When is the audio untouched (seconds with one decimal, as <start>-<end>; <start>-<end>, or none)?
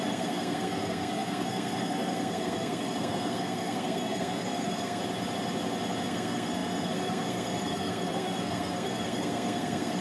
5.0-6.1